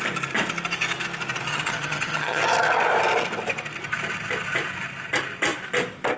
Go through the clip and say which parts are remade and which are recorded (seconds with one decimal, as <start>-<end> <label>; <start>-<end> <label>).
0.0-1.5 recorded; 1.5-2.4 remade; 2.4-6.2 recorded